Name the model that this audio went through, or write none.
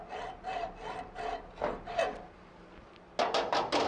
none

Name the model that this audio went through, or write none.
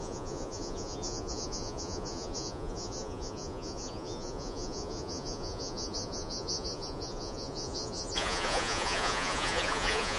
vocoder, Vocos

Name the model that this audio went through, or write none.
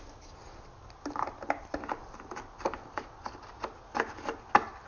none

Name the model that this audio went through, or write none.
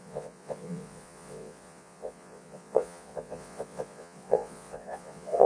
vocoder, Vocos